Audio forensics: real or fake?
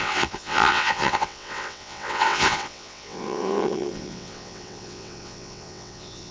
fake